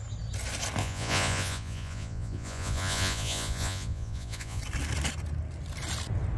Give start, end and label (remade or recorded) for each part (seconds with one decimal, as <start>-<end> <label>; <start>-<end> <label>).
0.0-0.8 recorded; 0.8-4.6 remade; 4.6-6.4 recorded